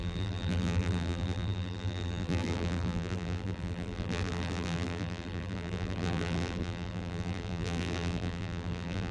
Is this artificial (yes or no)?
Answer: yes